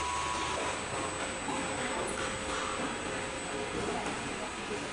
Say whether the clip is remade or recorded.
recorded